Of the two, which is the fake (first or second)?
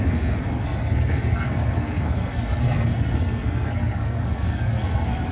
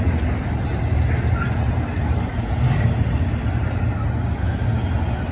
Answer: first